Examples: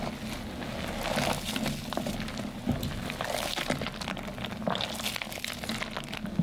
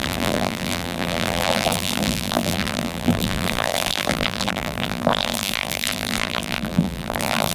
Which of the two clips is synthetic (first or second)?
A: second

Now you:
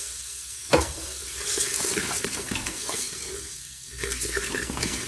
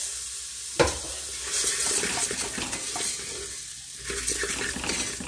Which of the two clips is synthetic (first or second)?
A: first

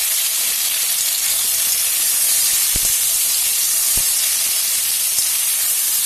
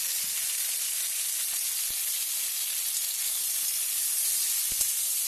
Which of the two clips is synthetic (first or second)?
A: first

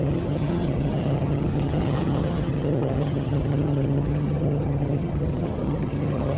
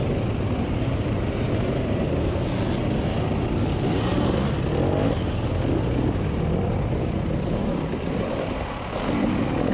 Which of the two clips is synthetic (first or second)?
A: first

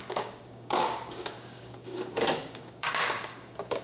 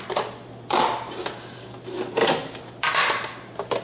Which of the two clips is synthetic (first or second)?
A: first